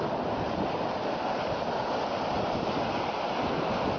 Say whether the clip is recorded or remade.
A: recorded